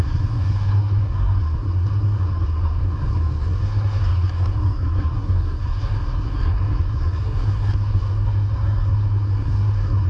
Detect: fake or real fake